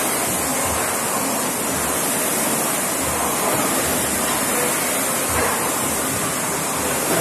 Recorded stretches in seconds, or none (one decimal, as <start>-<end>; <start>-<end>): 0.0-7.2